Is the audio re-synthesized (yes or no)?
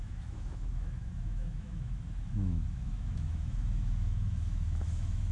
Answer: yes